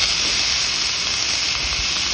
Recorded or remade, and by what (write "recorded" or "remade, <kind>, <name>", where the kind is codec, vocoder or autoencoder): recorded